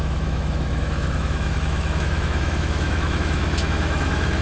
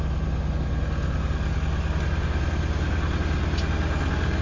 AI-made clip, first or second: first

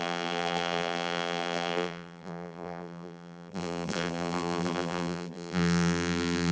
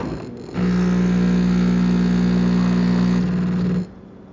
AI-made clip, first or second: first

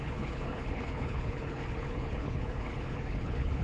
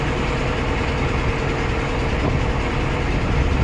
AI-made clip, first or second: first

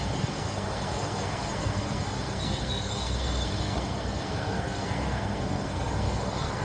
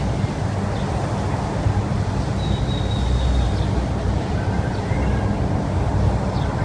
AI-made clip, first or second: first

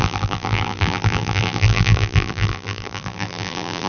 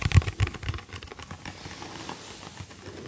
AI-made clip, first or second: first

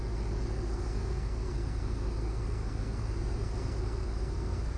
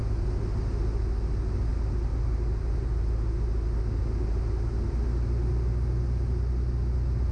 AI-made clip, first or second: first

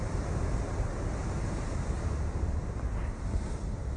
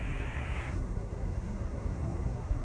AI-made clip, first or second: second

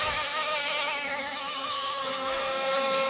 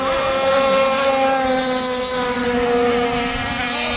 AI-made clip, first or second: first